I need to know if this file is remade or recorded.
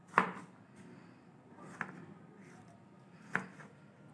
recorded